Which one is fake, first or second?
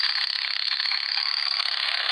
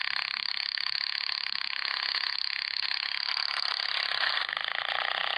first